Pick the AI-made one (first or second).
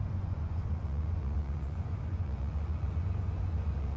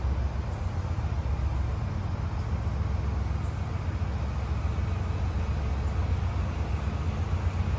first